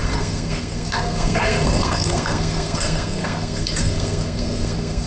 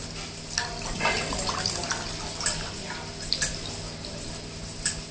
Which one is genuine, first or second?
second